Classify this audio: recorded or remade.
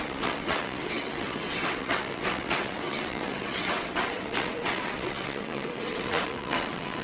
remade